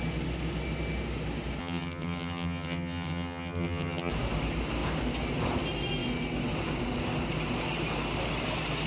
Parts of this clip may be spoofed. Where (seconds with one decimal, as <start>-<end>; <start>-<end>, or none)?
1.6-4.1